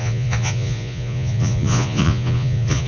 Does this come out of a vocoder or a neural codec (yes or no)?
yes